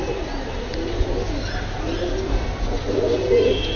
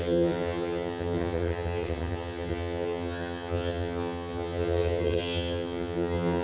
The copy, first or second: second